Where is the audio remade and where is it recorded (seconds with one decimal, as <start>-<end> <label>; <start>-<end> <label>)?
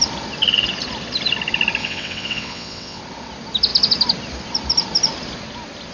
0.0-1.8 recorded; 1.8-3.0 remade; 3.0-5.9 recorded